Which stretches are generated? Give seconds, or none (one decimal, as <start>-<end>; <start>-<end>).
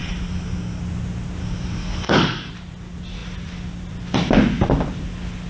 0.0-0.8; 1.4-2.5